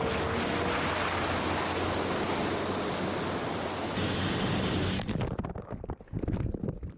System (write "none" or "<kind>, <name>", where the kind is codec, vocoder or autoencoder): none